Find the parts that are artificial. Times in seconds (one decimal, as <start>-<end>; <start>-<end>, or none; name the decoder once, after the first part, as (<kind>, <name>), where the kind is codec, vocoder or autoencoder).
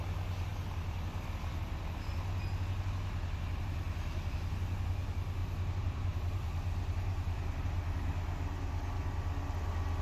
5.4-7.6 (vocoder, BigVGAN v2)